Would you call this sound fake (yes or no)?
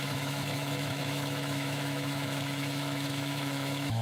yes